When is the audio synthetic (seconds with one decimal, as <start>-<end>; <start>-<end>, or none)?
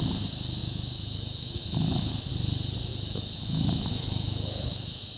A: 0.6-2.3; 2.9-5.2